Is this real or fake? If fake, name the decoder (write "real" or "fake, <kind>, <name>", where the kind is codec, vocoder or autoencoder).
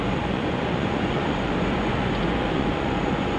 fake, vocoder, Vocos